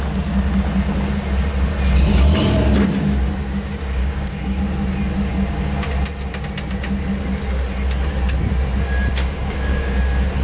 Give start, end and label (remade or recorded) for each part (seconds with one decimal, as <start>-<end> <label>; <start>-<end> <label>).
0.0-4.0 recorded; 4.0-4.6 remade; 4.6-9.2 recorded; 9.2-10.0 remade; 10.0-10.4 recorded